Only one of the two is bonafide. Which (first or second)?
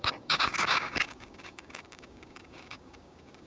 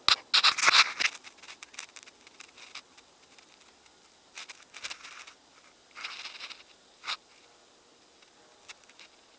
second